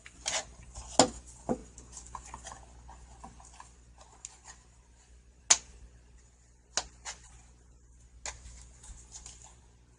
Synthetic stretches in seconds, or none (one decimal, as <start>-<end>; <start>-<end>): none